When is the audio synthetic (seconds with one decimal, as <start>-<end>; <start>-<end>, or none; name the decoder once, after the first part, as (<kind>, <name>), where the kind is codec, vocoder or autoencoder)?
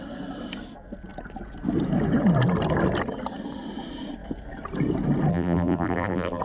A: 5.3-6.4 (vocoder, BigVGAN v2)